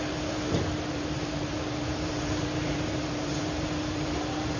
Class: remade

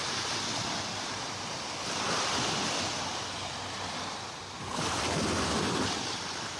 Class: recorded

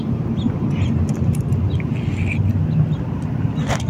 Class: recorded